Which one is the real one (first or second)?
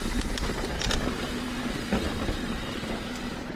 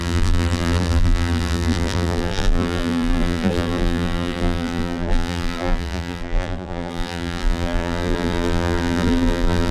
first